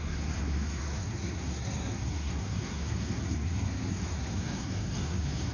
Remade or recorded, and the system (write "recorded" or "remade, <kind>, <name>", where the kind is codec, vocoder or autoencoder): remade, codec, SNAC